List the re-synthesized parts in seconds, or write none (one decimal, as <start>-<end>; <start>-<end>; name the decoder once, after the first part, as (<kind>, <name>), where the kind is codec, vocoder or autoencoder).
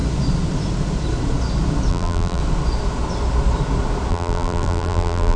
1.9-2.4 (vocoder, BigVGAN v2); 4.1-5.4